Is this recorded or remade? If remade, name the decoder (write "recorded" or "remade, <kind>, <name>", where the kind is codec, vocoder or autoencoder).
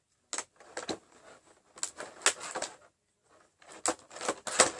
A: recorded